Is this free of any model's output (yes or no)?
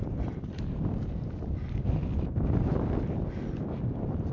yes